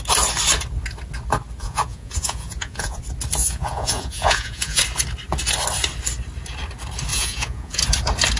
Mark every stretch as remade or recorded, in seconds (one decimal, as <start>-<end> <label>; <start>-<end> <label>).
0.0-1.6 recorded; 1.6-3.0 remade; 3.0-3.4 recorded; 3.4-4.8 remade; 4.8-7.1 recorded; 7.1-7.8 remade; 7.8-8.4 recorded

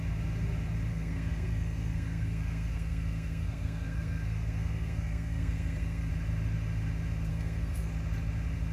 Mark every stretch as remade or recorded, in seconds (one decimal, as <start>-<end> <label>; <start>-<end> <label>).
0.0-0.9 recorded; 0.9-6.1 remade; 6.1-7.3 recorded; 7.3-7.9 remade; 7.9-8.7 recorded

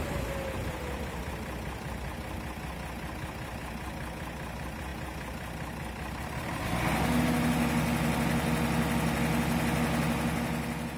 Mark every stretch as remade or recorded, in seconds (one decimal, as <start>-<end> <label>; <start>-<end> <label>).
0.0-11.0 recorded

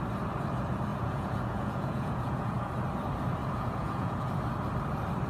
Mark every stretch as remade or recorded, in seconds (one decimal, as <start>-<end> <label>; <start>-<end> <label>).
0.0-0.9 recorded; 0.9-2.7 remade; 2.7-3.4 recorded; 3.4-4.3 remade; 4.3-5.3 recorded

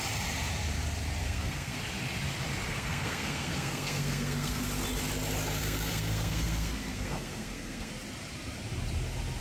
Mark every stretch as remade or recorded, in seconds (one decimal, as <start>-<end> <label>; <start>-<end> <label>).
0.0-1.2 recorded; 1.2-1.8 remade; 1.8-2.7 recorded; 2.7-4.6 remade; 4.6-5.6 recorded; 5.6-7.9 remade; 7.9-9.4 recorded

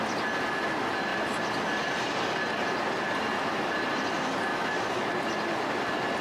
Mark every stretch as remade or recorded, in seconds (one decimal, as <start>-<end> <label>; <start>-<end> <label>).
0.0-4.5 recorded; 4.5-5.1 remade; 5.1-6.2 recorded

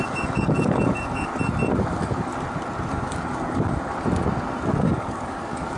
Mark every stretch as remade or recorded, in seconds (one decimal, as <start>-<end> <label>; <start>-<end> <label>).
0.0-1.3 remade; 1.3-1.8 recorded; 1.8-2.3 remade; 2.3-2.9 recorded; 2.9-3.9 remade; 3.9-4.8 recorded; 4.8-5.8 remade

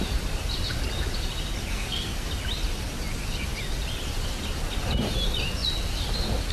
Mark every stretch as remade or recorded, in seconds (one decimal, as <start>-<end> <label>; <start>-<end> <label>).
0.0-1.7 recorded; 1.7-2.3 remade; 2.3-6.5 recorded